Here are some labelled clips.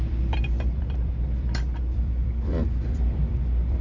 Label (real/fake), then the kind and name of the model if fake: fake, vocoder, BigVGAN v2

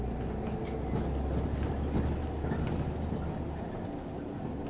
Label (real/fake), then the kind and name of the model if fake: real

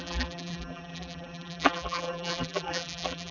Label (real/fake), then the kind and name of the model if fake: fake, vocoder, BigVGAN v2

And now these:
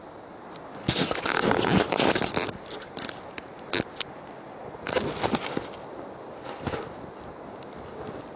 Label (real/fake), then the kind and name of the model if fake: real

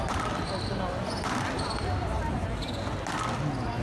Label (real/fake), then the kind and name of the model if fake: real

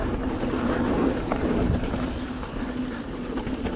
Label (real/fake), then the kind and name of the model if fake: fake, vocoder, BigVGAN v2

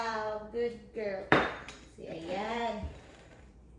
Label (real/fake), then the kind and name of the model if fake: fake, vocoder, BigVGAN v2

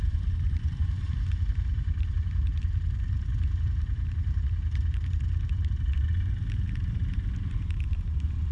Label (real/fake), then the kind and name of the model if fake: fake, vocoder, BigVGAN v2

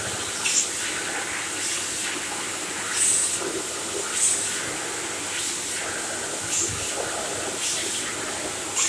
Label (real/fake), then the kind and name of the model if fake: real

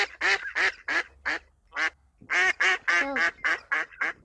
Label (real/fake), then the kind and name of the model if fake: real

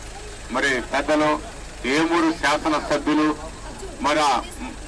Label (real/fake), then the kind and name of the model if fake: real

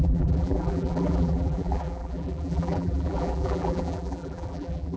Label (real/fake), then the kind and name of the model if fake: fake, vocoder, BigVGAN v2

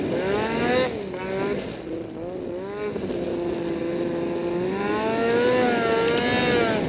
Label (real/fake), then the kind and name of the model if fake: real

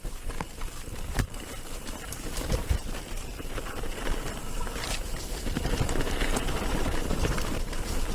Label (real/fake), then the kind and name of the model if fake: fake, vocoder, BigVGAN v2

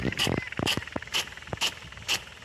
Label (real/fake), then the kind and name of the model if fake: real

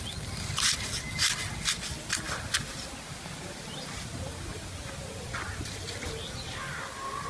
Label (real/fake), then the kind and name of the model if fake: real